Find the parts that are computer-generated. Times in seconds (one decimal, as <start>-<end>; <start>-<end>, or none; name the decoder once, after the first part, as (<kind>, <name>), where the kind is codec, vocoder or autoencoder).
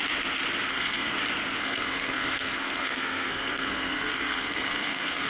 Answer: 0.7-1.1 (codec, SNAC); 1.6-5.3